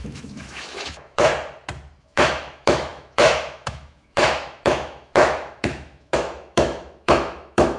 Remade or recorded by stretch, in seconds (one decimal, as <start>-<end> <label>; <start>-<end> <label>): 0.0-1.3 remade; 1.3-2.0 recorded; 2.0-7.8 remade

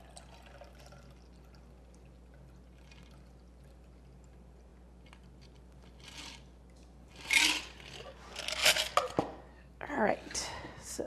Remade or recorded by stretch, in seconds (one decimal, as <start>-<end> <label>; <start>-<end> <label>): 0.0-11.1 recorded

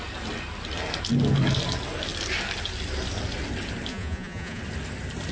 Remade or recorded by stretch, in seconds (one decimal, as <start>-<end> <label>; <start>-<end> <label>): 0.0-3.9 recorded; 3.9-4.6 remade; 4.6-5.3 recorded